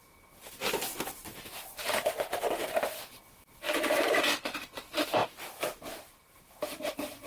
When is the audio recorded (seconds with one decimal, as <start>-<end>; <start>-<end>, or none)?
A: 0.0-5.2